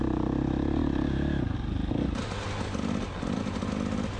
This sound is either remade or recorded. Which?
recorded